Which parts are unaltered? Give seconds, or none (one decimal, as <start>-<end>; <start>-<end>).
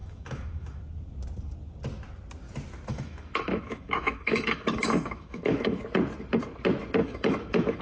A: 0.8-2.9; 5.8-7.0